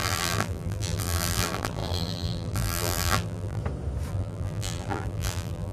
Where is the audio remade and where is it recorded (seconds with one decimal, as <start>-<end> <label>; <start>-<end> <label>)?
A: 0.0-3.6 remade; 3.6-4.1 recorded; 4.1-5.7 remade